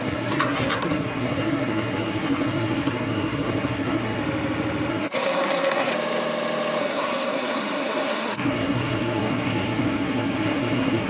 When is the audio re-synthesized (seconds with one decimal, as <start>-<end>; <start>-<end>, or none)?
0.0-4.2; 4.9-5.9; 6.8-11.1